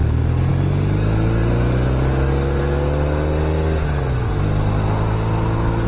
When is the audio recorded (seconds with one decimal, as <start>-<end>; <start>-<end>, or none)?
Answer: 0.0-5.9

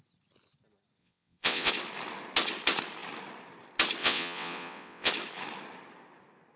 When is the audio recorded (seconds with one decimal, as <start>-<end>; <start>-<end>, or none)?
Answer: 0.0-1.0; 1.7-4.0; 5.1-6.6

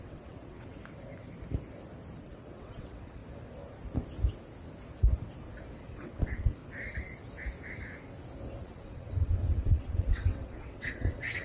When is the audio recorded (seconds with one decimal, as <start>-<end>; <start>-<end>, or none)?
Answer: 0.8-2.2; 3.2-5.8; 6.6-8.6

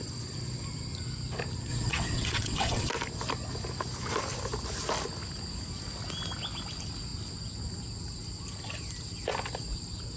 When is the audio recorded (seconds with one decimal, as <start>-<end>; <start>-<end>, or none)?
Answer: 0.0-1.7; 2.9-10.2

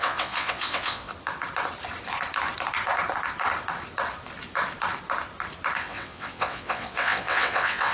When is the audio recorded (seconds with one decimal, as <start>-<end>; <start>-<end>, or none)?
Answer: 1.1-5.8